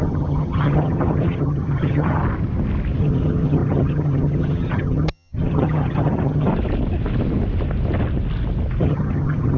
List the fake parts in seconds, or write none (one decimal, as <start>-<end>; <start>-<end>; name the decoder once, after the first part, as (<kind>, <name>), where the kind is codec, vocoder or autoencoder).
0.0-2.2 (vocoder, HiFi-GAN); 3.0-6.5; 8.8-9.6